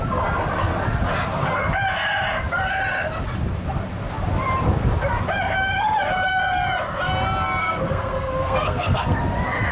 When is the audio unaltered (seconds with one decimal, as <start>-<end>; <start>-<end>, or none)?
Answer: 0.0-7.6; 9.2-9.7